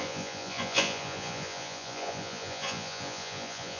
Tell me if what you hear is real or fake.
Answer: fake